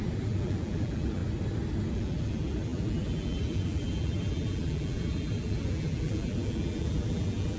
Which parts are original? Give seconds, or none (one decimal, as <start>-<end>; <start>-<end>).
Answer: 1.2-1.9

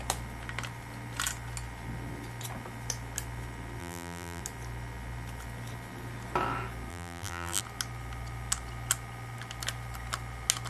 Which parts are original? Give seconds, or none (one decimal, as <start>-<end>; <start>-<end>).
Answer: 0.0-3.8; 4.4-6.9; 7.6-10.7